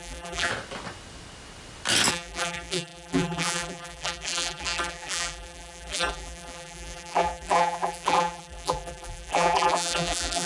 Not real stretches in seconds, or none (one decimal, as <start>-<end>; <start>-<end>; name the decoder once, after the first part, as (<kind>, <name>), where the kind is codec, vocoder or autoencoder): 0.0-0.5 (vocoder, BigVGAN v2); 2.1-10.5